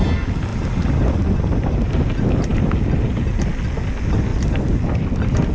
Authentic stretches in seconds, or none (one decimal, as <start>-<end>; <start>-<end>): 0.0-5.5